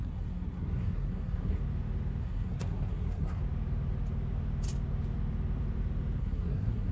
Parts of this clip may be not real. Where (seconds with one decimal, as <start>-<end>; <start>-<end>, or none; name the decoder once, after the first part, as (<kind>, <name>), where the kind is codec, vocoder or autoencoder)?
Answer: 0.0-1.6 (codec, SNAC); 2.2-3.4; 6.2-6.9